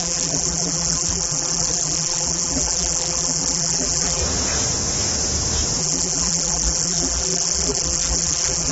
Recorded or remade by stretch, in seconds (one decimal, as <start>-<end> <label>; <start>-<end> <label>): 0.0-4.2 remade; 4.2-5.8 recorded; 5.8-8.7 remade